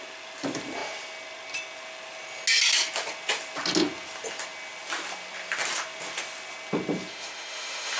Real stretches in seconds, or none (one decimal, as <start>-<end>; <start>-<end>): 0.0-7.1